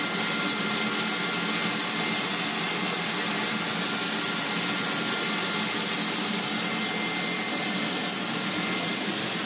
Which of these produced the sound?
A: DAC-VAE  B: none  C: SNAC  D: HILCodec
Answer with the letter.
B